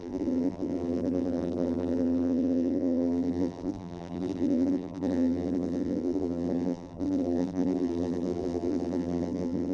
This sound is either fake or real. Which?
fake